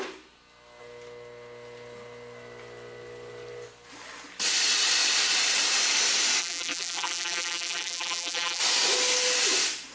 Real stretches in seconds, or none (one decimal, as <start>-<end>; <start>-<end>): 0.0-6.4; 8.6-9.9